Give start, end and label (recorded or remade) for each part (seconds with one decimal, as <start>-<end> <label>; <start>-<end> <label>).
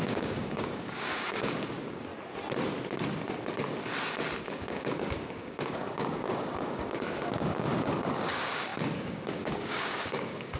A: 0.0-2.1 remade; 2.1-4.5 recorded; 4.5-10.6 remade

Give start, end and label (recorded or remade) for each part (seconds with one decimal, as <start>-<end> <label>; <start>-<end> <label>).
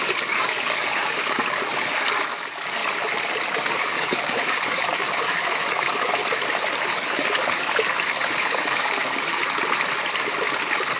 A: 0.0-2.8 remade; 2.8-3.5 recorded; 3.5-6.2 remade; 6.2-6.9 recorded; 6.9-9.4 remade; 9.4-11.0 recorded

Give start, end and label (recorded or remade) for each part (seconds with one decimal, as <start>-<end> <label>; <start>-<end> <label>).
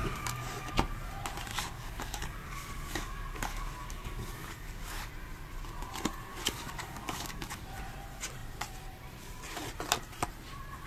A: 0.0-0.7 remade; 0.7-1.5 recorded; 1.5-5.1 remade; 5.1-6.3 recorded; 6.3-7.6 remade; 7.6-10.9 recorded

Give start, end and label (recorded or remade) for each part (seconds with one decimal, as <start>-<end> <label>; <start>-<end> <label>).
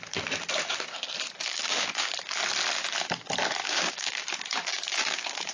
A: 0.0-1.5 recorded; 1.5-2.1 remade; 2.1-3.6 recorded; 3.6-5.5 remade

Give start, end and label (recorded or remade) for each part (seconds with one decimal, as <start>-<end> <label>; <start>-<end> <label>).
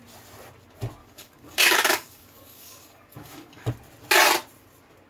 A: 0.0-1.0 recorded; 1.0-3.7 remade; 3.7-5.1 recorded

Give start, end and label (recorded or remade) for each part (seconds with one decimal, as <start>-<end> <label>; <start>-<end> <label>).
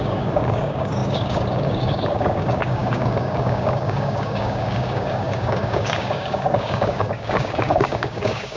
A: 0.0-8.6 remade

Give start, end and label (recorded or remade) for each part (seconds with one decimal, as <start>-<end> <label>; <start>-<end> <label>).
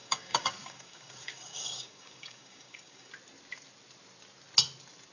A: 0.0-3.1 remade; 3.1-5.1 recorded